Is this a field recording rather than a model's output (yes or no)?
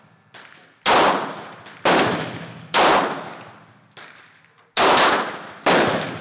yes